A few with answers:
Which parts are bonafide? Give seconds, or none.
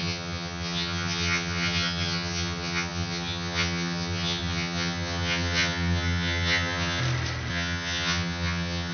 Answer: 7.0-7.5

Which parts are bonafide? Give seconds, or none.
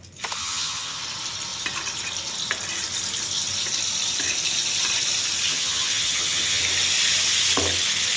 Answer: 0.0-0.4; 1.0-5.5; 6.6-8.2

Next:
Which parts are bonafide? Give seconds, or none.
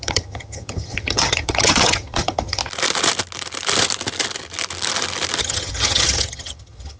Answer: 2.6-5.4